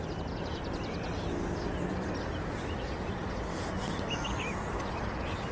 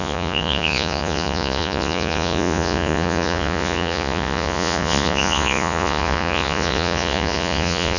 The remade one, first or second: second